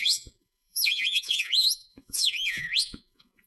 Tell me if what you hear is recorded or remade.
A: remade